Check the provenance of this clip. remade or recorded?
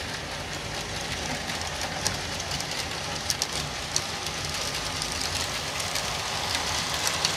recorded